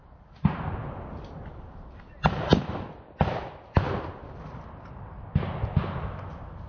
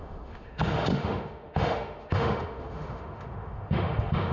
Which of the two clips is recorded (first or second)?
first